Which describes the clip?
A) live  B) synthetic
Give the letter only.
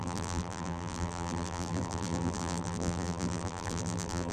B